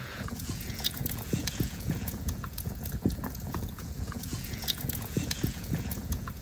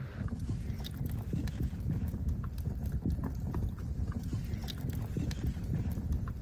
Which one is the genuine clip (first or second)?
second